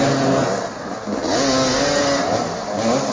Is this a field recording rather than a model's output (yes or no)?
yes